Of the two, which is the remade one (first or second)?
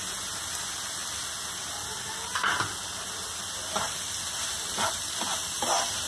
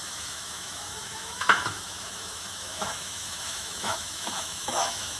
second